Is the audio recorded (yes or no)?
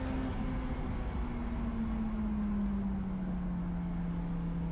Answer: yes